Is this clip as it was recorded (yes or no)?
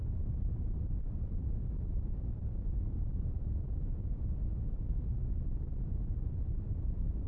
yes